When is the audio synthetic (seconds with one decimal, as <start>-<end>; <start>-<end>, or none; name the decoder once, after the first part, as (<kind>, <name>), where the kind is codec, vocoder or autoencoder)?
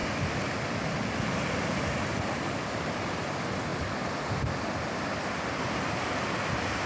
none